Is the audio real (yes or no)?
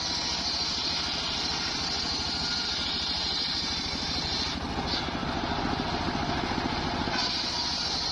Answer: yes